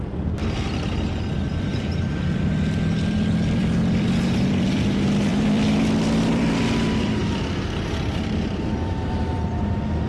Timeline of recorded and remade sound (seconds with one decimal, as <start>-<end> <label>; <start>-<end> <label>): 0.0-0.4 remade; 0.4-1.2 recorded; 1.2-10.1 remade